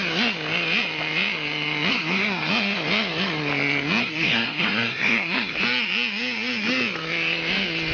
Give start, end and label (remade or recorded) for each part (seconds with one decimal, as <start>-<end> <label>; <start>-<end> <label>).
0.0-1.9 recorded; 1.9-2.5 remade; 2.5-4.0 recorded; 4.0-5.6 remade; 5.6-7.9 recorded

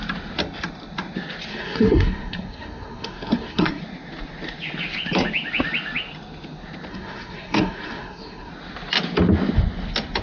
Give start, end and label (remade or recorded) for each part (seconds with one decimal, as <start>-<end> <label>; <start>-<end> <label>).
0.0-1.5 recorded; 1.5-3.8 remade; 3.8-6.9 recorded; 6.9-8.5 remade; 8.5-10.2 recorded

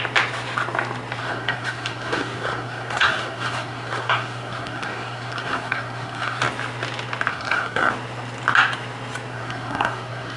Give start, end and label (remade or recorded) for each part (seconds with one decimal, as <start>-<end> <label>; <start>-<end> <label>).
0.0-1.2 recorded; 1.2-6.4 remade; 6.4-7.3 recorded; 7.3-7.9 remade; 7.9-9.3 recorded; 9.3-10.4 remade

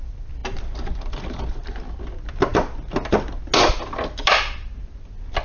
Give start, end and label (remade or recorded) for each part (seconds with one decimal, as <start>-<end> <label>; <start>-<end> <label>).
0.0-5.4 recorded